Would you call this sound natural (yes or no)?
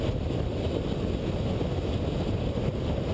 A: yes